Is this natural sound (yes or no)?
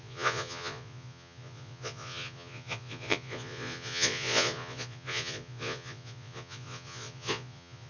no